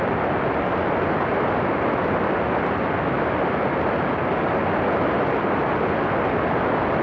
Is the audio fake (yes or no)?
no